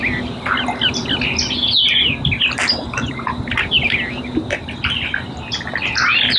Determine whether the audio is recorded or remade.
recorded